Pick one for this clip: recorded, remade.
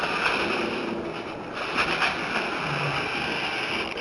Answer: recorded